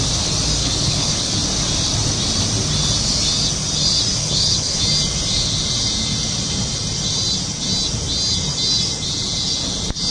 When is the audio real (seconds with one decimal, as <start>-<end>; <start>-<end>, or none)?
0.0-0.6; 1.3-4.2; 4.8-10.1